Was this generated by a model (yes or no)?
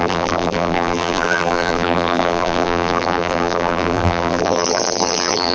yes